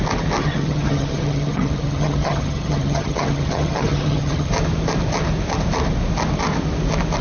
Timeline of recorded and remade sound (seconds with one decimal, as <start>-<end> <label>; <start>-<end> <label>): 0.0-0.4 recorded; 0.4-4.5 remade; 4.5-7.2 recorded